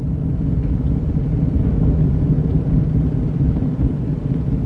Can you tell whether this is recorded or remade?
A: recorded